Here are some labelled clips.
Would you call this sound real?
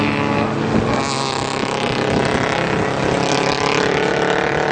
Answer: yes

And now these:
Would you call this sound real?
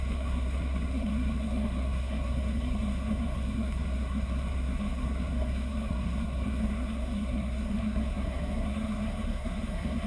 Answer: no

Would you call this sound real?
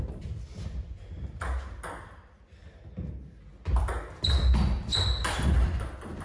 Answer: yes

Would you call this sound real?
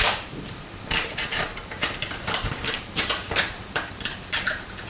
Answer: no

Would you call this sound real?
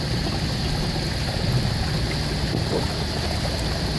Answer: yes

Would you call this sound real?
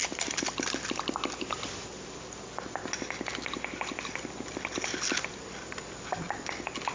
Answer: yes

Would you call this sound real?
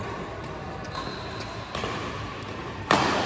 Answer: yes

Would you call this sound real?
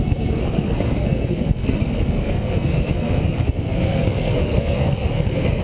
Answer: no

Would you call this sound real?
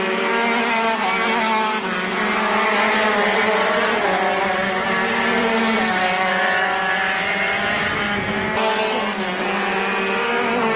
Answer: yes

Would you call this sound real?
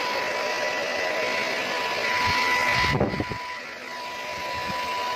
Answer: yes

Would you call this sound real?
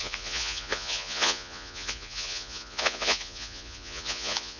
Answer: no